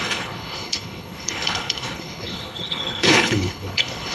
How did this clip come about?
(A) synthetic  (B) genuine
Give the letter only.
A